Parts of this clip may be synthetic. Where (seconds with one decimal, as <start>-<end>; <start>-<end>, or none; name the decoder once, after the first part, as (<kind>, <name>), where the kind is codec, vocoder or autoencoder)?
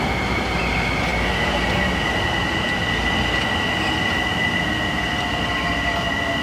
none